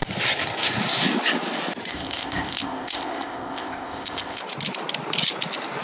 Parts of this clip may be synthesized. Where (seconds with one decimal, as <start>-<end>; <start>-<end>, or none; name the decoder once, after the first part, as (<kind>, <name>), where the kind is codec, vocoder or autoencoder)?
1.9-4.4 (codec, ZipCodec)